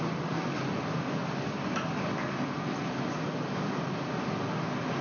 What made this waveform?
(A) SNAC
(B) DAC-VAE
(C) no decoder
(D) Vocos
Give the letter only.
C